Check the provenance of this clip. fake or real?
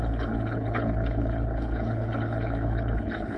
fake